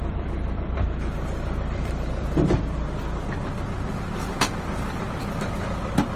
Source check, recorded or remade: remade